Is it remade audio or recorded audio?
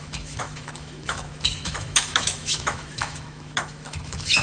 remade